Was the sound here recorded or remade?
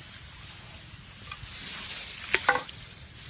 recorded